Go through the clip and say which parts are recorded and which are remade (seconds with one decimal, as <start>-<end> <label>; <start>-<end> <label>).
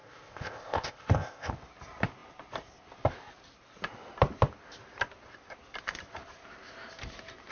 0.0-1.5 remade; 1.5-7.5 recorded